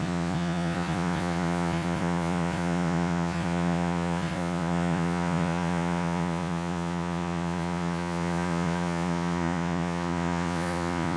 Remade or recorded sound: remade